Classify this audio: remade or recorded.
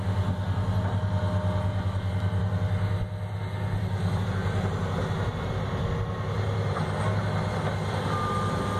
recorded